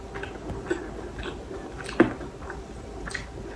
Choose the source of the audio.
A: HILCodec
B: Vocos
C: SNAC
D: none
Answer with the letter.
D